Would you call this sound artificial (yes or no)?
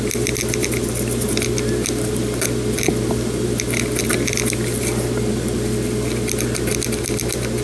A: no